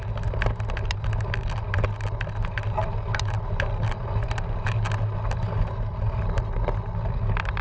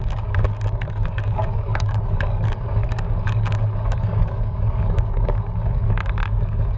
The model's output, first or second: second